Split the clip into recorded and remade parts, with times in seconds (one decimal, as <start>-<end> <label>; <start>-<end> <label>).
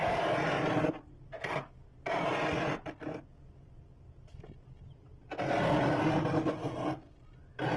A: 0.0-7.8 recorded